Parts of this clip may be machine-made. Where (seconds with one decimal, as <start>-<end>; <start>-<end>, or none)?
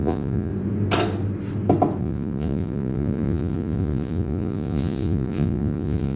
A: 0.0-0.5; 2.0-6.2